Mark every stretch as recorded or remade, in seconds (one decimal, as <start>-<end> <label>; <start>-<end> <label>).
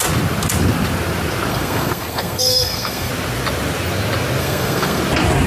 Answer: 0.0-1.5 recorded; 1.5-3.1 remade; 3.1-4.4 recorded; 4.4-5.0 remade; 5.0-5.5 recorded